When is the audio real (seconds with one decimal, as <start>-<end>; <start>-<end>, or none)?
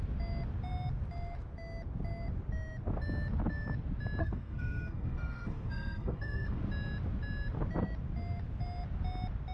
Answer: 0.0-4.2; 6.6-9.5